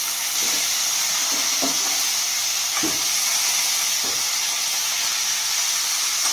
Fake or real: real